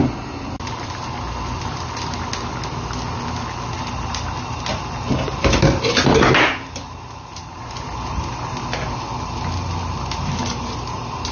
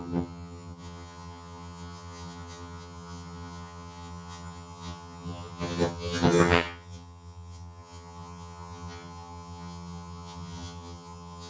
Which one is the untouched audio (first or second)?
first